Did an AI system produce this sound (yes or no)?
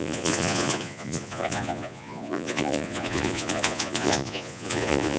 yes